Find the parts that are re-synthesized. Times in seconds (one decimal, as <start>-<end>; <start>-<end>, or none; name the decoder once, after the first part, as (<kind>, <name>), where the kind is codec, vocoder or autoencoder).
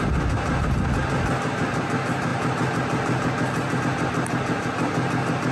none